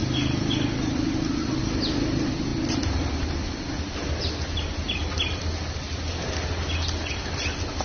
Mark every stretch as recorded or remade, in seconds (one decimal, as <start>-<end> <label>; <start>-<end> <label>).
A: 0.0-1.6 remade; 1.6-7.8 recorded